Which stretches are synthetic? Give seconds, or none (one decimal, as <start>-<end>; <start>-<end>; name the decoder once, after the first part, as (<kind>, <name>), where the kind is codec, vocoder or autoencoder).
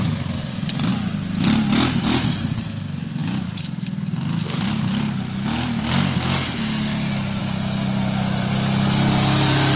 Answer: none